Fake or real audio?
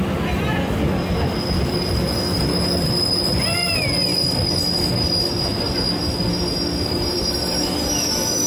real